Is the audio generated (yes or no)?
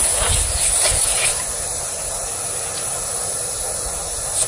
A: no